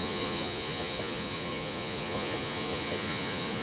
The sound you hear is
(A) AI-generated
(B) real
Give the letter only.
A